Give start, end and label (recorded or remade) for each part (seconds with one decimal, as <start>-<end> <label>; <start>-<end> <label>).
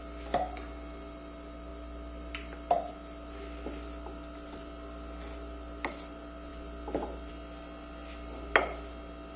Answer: 0.0-9.4 recorded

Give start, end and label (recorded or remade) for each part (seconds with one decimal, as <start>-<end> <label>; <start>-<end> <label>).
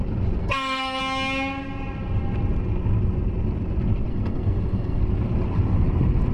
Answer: 0.0-0.4 recorded; 0.4-1.0 remade; 1.0-4.1 recorded; 4.1-5.0 remade; 5.0-6.3 recorded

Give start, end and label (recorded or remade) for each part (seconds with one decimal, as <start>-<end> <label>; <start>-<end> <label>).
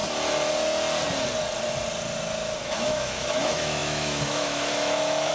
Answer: 0.0-2.6 recorded; 2.6-5.3 remade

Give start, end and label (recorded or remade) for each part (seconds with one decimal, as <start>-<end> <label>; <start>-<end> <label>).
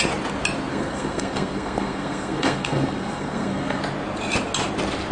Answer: 0.0-0.7 recorded; 0.7-3.8 remade; 3.8-5.1 recorded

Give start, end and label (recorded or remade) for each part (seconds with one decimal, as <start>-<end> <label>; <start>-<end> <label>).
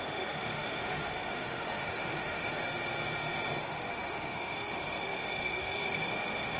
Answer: 0.0-2.6 remade; 2.6-3.6 recorded; 3.6-6.6 remade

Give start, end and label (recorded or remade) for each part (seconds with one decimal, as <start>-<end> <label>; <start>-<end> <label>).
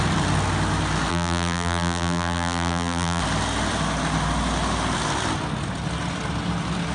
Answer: 0.0-1.1 recorded; 1.1-3.2 remade; 3.2-6.9 recorded